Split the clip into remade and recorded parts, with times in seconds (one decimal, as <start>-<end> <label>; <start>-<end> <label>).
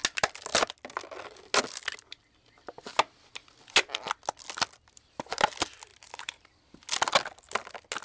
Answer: 0.0-5.9 recorded; 5.9-6.6 remade; 6.6-8.0 recorded